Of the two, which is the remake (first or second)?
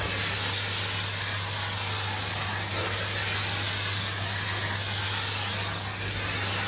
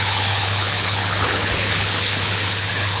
second